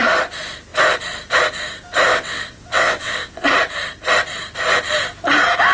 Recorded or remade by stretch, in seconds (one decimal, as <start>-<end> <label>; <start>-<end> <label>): 0.0-2.1 recorded; 2.1-3.5 remade; 3.5-5.7 recorded